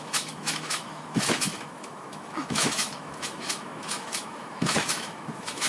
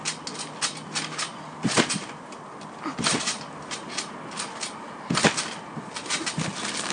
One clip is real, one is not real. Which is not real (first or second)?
first